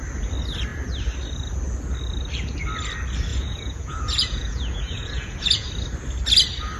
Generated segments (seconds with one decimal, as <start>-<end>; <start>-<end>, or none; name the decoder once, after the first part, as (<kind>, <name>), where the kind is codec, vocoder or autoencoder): 3.3-5.7 (vocoder, Vocos)